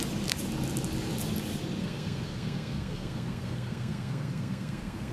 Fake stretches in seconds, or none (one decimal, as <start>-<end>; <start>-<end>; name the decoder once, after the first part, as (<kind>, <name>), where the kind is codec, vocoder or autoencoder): 1.8-5.1 (codec, SNAC)